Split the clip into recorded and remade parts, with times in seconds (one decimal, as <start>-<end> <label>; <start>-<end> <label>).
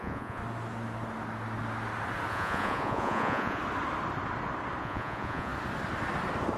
0.0-0.4 remade; 0.4-2.3 recorded; 2.3-3.6 remade; 3.6-4.8 recorded; 4.8-5.5 remade; 5.5-6.6 recorded